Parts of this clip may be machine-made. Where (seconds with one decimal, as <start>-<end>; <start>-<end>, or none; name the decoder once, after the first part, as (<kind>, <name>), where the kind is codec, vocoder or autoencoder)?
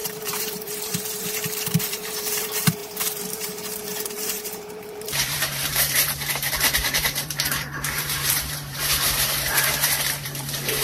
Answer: 0.0-10.8 (vocoder, BigVGAN v2)